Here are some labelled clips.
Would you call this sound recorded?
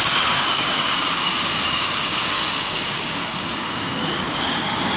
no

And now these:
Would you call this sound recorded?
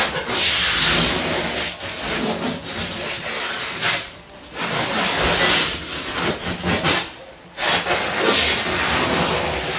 yes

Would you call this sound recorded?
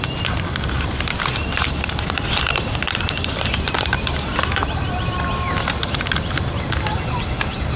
no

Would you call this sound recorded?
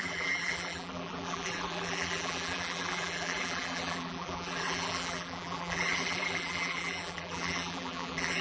no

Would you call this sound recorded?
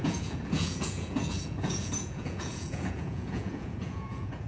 no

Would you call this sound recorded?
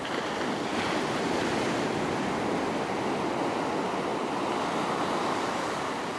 yes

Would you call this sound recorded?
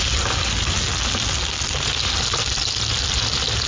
yes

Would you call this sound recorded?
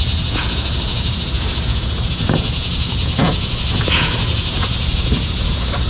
no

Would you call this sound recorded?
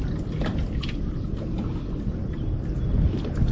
yes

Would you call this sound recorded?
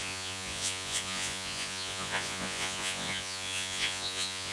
no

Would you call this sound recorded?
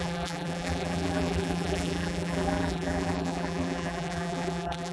no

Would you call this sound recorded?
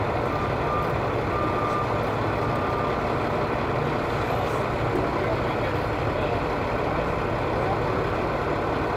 yes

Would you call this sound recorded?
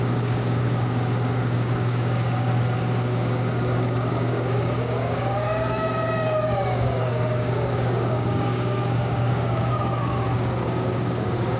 no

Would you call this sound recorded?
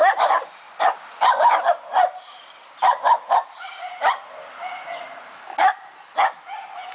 yes